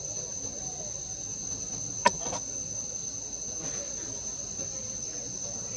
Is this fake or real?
real